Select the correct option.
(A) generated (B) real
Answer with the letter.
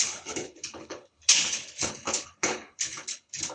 A